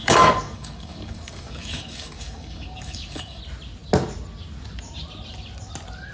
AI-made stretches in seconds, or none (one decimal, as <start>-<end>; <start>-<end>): 0.0-3.4